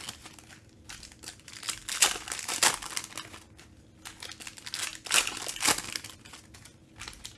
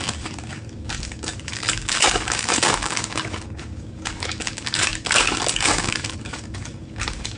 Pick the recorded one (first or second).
first